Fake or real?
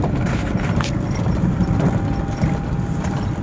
real